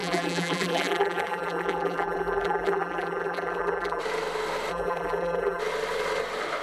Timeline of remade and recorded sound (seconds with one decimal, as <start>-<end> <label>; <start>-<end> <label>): 0.0-4.0 remade; 4.0-4.7 recorded; 4.7-5.6 remade; 5.6-6.6 recorded